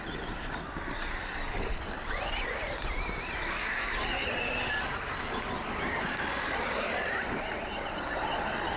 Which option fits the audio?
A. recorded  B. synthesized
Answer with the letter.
A